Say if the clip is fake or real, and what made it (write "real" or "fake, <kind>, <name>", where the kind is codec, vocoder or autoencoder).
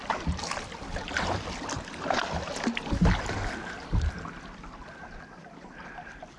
real